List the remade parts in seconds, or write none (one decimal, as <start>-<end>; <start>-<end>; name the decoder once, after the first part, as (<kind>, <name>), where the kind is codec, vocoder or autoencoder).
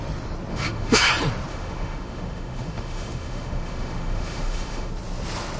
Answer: 0.5-1.1 (autoencoder, DAC-VAE); 1.5-4.9